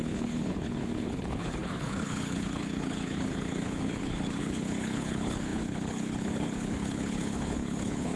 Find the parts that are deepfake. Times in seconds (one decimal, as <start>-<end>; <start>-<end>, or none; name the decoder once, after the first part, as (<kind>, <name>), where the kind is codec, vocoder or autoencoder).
0.0-8.2 (codec, HILCodec)